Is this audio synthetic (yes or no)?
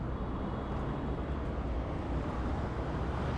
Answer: no